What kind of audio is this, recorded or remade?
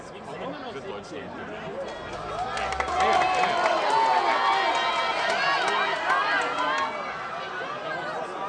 recorded